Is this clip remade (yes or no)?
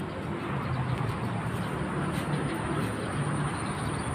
no